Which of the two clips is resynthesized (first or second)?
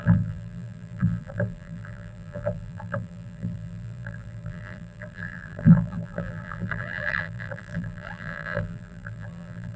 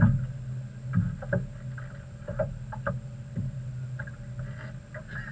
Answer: first